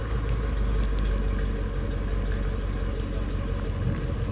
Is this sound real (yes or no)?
yes